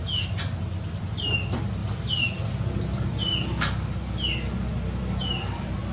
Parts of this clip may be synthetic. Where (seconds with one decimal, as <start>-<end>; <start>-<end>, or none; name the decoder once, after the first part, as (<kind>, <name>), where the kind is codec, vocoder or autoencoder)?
none